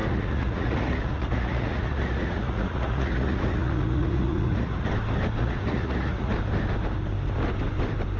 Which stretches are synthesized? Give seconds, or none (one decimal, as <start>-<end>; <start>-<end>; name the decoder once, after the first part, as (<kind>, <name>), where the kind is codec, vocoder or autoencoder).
0.0-4.9 (vocoder, Vocos); 5.4-6.3